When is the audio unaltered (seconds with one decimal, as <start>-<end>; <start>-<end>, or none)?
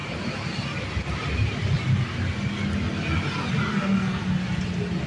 0.0-3.7; 4.2-5.1